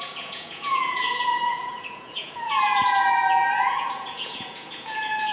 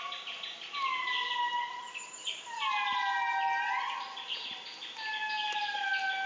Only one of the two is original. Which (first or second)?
second